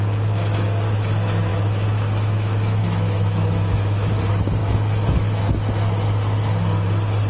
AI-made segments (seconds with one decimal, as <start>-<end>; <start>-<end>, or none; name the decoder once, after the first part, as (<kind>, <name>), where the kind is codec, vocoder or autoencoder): 1.5-4.1 (autoencoder, DAC-VAE); 4.6-5.5